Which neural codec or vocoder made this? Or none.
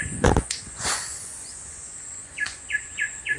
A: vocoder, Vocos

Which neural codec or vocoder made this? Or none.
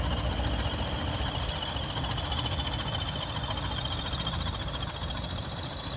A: none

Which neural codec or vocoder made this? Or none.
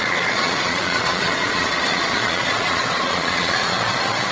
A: vocoder, Vocos